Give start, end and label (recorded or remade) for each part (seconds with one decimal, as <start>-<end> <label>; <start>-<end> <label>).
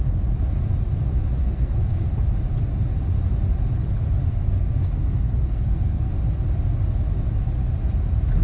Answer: 0.0-1.4 recorded; 1.4-2.1 remade; 2.1-4.3 recorded; 4.3-6.1 remade; 6.1-8.4 recorded